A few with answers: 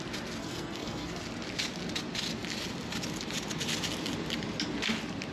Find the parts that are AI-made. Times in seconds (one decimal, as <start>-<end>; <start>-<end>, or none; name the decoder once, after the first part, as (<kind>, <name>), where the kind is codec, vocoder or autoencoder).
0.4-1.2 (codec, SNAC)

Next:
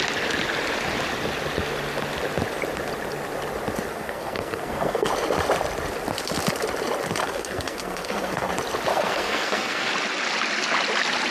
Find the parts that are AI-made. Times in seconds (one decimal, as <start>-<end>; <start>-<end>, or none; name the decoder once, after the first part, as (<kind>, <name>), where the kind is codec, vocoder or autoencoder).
3.9-5.1 (codec, SNAC); 7.2-8.5; 8.9-9.9

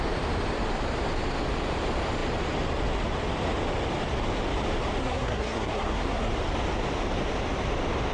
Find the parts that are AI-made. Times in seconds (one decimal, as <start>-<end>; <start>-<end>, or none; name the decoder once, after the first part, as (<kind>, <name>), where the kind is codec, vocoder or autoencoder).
5.0-6.3 (codec, SNAC)

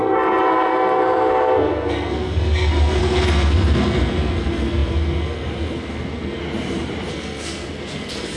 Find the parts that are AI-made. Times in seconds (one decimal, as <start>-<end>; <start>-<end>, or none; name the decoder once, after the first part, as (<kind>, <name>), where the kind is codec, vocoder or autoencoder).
0.0-6.4 (codec, SNAC); 7.1-8.4

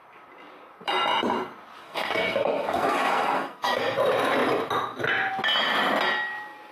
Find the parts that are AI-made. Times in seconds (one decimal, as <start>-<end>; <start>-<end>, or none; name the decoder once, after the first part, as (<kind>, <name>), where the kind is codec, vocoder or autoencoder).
1.8-3.8 (codec, SNAC)

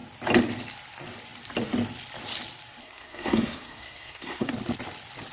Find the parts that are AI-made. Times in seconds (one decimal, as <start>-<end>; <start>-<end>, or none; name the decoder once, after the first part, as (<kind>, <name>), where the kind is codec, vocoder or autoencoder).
2.8-4.5 (codec, SNAC)

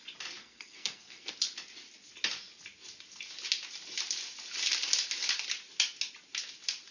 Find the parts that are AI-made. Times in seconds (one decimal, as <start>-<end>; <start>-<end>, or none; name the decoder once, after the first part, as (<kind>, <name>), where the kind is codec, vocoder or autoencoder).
0.4-1.3 (codec, SNAC)

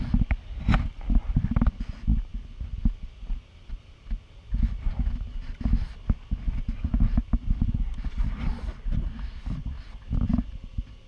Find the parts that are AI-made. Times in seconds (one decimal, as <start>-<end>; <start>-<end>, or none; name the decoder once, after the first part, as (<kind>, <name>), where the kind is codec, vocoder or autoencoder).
none